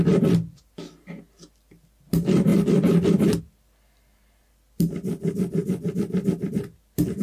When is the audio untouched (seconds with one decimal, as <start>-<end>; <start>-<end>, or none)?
0.0-7.2